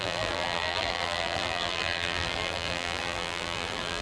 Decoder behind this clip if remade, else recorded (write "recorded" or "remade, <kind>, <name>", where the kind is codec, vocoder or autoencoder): remade, vocoder, BigVGAN v2